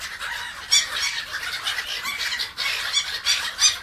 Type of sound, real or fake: real